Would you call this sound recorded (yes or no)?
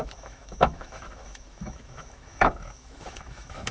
no